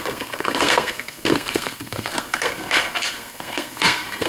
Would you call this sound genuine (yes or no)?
no